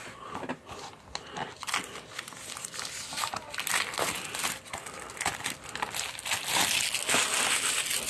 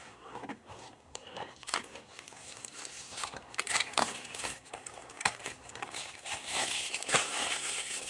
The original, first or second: first